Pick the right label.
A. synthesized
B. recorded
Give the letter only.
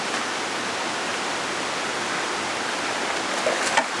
B